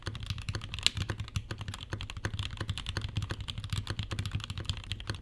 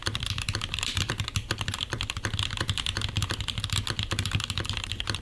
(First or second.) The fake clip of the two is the second